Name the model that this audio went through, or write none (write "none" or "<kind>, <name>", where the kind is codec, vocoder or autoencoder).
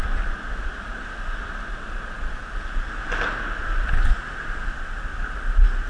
none